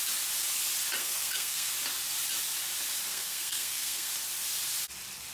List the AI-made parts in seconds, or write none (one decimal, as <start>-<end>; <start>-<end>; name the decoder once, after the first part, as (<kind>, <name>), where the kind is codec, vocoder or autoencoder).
1.0-1.7 (codec, SNAC); 3.1-4.1